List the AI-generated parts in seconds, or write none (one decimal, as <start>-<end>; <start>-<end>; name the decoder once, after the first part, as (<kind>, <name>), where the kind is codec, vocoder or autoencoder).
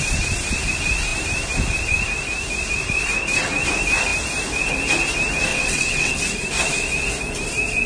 5.5-6.2 (vocoder, WaveNeXt)